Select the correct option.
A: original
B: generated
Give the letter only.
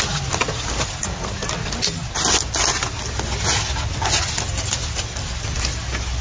A